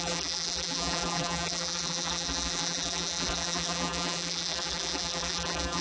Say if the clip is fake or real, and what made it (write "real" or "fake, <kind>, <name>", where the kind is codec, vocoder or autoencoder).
fake, vocoder, BigVGAN v2